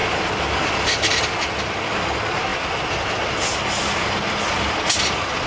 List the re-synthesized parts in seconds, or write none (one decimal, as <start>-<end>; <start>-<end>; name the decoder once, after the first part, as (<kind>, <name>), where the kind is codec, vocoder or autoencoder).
none